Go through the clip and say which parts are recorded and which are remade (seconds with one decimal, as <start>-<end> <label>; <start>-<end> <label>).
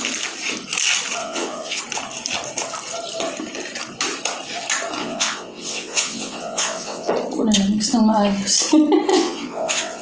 0.0-1.2 recorded; 1.2-1.8 remade; 1.8-5.0 recorded; 5.0-7.1 remade; 7.1-9.1 recorded; 9.1-10.0 remade